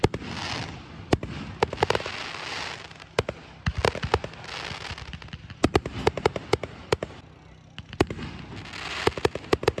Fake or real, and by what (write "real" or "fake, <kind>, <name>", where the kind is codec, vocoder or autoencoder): real